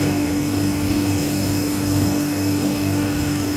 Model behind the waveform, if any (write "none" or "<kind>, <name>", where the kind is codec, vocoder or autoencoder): codec, DAC